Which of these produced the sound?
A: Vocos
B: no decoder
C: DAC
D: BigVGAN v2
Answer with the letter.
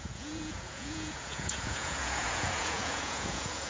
A